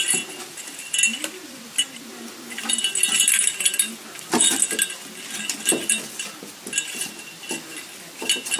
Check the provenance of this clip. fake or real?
real